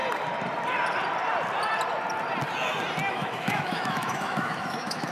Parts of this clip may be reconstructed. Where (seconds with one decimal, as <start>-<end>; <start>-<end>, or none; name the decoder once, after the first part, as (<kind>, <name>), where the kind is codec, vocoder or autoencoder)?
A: 3.1-5.1 (autoencoder, DAC-VAE)